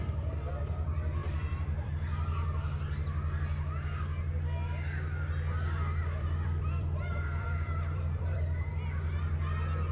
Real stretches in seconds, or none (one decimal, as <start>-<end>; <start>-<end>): 0.0-1.2; 1.9-6.0; 8.7-9.9